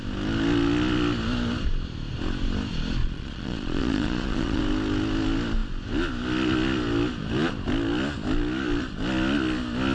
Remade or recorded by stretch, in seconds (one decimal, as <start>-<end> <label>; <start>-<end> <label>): 0.0-3.0 recorded; 3.0-4.6 remade; 4.6-9.9 recorded